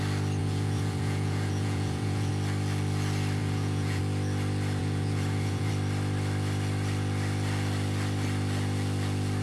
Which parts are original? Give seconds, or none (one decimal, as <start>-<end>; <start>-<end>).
0.0-0.4; 2.3-3.4; 4.0-4.8; 5.7-9.4